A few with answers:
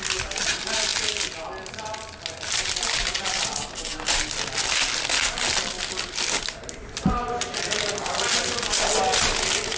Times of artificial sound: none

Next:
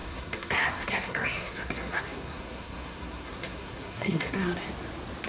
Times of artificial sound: 0.0-4.4 (codec, SNAC)

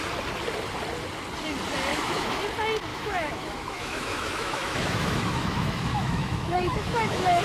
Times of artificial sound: 1.9-2.4 (autoencoder, DAC-VAE); 2.9-7.4

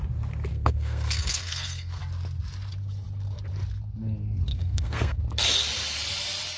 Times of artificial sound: 0.5-2.0 (codec, SNAC); 4.5-5.2

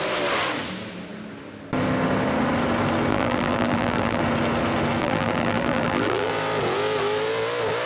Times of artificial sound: 3.1-4.2 (vocoder, BigVGAN v2); 5.0-6.3

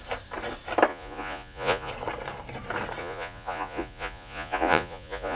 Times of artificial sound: 0.9-1.9 (vocoder, Vocos); 3.0-5.4

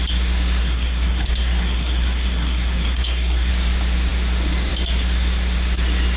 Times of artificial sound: 0.6-3.5 (codec, SNAC)

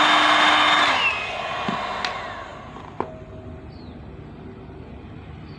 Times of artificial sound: none